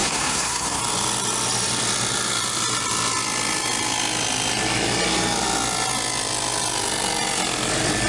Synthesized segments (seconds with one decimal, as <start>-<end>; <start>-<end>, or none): 0.0-0.8